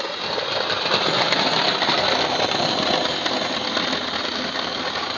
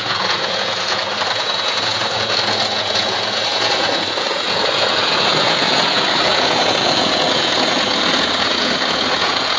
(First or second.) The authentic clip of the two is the first